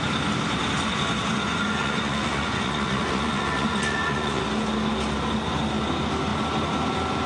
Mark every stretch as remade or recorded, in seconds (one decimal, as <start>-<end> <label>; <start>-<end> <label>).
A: 0.0-1.4 recorded; 1.4-4.4 remade; 4.4-7.3 recorded